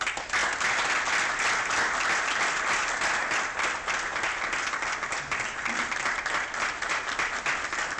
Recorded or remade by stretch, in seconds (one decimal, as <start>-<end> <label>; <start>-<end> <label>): 0.0-8.0 recorded